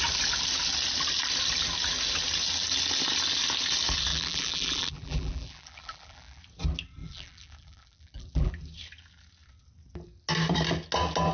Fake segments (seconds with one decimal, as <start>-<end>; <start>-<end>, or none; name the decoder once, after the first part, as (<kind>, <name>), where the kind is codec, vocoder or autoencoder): 4.1-6.4 (vocoder, BigVGAN v2); 7.0-8.5